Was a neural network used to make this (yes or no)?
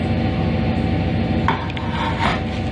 no